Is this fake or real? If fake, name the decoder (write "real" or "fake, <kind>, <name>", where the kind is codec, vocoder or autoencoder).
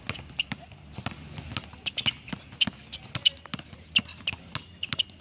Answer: real